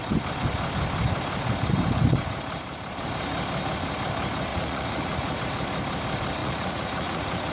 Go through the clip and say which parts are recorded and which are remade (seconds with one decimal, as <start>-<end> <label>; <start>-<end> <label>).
0.0-4.5 recorded; 4.5-5.4 remade; 5.4-6.4 recorded; 6.4-7.5 remade